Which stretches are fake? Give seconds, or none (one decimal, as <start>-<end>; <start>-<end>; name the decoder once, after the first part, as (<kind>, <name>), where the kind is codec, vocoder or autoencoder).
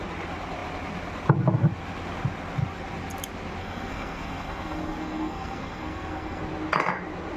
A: 3.6-6.4 (codec, SNAC)